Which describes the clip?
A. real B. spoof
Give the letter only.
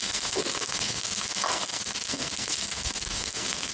B